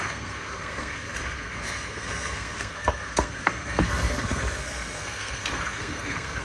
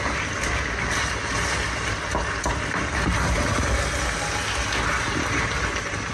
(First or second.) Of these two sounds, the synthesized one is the first